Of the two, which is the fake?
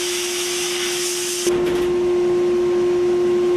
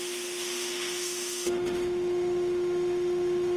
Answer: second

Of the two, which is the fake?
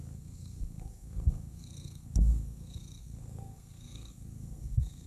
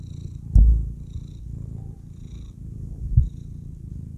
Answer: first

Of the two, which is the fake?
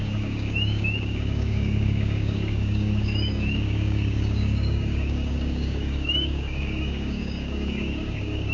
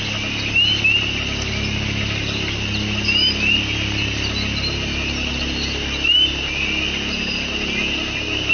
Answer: first